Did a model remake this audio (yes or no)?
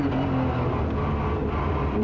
no